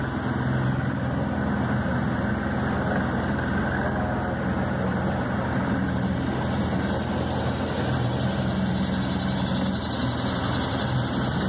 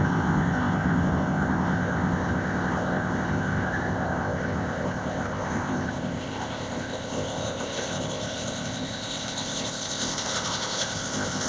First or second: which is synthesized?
second